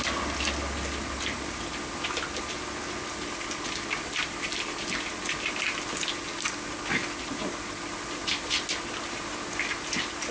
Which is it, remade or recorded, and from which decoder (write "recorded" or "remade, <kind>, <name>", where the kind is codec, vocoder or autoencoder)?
recorded